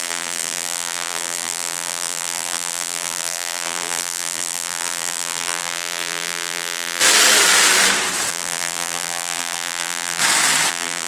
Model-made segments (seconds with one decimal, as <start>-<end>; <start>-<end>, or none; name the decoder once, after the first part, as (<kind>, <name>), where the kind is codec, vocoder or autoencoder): 0.0-7.0 (vocoder, BigVGAN v2); 8.3-10.2; 10.7-11.1